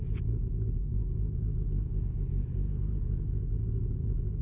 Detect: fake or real real